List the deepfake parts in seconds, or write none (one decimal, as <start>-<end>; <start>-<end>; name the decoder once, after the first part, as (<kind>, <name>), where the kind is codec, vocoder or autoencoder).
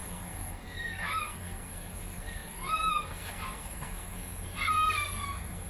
0.0-5.7 (codec, SNAC)